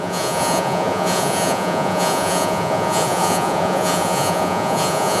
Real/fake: fake